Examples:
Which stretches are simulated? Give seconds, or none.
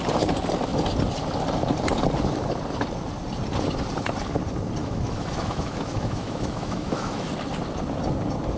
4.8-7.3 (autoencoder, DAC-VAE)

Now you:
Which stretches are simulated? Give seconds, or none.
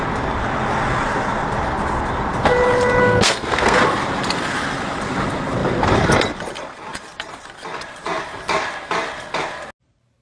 3.0-3.8 (codec, SNAC)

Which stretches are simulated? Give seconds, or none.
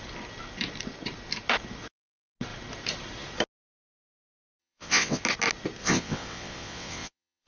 4.6-5.2 (vocoder, WaveNeXt); 5.8-7.5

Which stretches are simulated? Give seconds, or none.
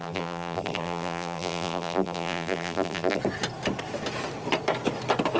0.0-3.2 (vocoder, BigVGAN v2)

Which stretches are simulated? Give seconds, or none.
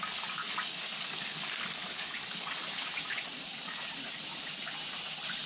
0.0-2.9 (codec, DAC)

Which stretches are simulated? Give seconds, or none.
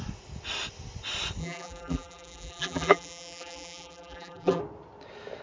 1.4-4.6 (vocoder, BigVGAN v2)